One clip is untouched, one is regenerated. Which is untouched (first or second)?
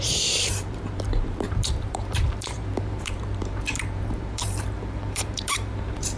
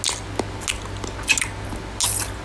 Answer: second